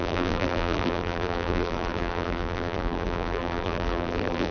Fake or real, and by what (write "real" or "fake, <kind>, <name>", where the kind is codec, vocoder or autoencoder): fake, vocoder, BigVGAN v2